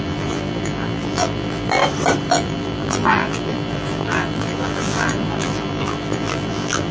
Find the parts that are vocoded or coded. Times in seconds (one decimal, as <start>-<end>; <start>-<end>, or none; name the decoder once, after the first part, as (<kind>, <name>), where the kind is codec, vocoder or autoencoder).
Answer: 0.0-1.8 (vocoder, BigVGAN v2); 2.3-6.9

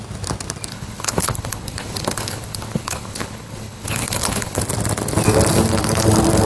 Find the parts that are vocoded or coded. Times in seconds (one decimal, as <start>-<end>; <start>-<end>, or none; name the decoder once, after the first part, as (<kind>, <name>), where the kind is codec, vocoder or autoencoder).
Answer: 0.7-4.6 (codec, HILCodec)

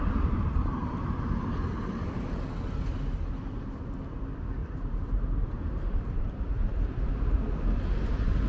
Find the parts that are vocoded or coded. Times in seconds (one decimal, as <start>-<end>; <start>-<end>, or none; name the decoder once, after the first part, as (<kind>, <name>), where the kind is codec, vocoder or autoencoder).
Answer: 4.6-7.0 (vocoder, BigVGAN v2)

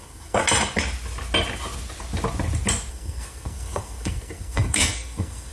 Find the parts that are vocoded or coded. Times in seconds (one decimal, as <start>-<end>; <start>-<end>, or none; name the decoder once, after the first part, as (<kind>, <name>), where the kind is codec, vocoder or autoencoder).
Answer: 0.0-0.4 (codec, SNAC); 2.9-5.5